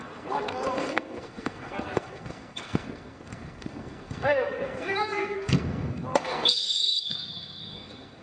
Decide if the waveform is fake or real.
fake